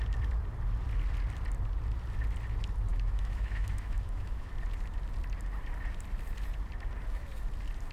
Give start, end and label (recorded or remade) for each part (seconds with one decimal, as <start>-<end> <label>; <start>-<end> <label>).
0.0-2.9 recorded; 2.9-4.5 remade; 4.5-7.9 recorded

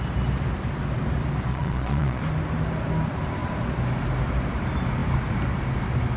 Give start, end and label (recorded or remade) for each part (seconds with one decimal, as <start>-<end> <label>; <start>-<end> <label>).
0.0-1.5 recorded; 1.5-2.2 remade; 2.2-6.2 recorded

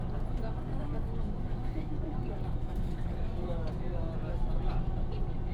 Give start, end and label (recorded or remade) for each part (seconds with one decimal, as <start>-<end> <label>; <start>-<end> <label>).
0.0-0.7 recorded; 0.7-3.7 remade; 3.7-5.5 recorded

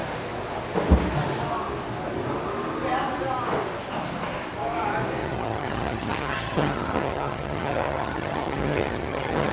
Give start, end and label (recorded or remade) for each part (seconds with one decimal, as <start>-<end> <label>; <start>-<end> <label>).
0.0-5.2 recorded; 5.2-9.5 remade

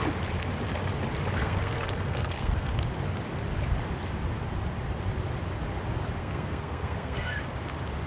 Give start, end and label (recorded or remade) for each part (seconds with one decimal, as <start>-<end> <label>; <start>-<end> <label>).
0.0-1.4 recorded; 1.4-2.7 remade; 2.7-6.2 recorded; 6.2-7.4 remade; 7.4-8.1 recorded